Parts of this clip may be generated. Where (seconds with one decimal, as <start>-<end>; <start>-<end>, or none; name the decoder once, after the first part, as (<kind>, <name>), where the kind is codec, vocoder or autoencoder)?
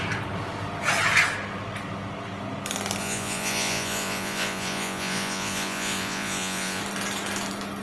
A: 3.0-6.8 (vocoder, Vocos)